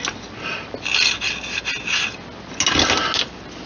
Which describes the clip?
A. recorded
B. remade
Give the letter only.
A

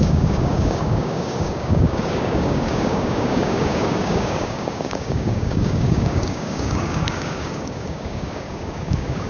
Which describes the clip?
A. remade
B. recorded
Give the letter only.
A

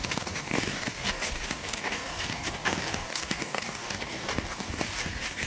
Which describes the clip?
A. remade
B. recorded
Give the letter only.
A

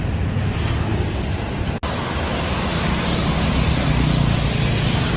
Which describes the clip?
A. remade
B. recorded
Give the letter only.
B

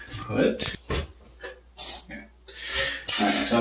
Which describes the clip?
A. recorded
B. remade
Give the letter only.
A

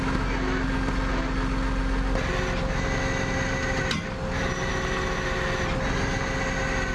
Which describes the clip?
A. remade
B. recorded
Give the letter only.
B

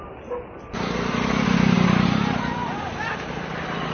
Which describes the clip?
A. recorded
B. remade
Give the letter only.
A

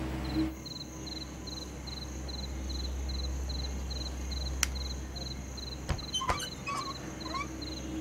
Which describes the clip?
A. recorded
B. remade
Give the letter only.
A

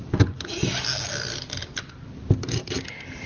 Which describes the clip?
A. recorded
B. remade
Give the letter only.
A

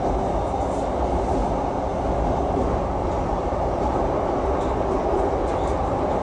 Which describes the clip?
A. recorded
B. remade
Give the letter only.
A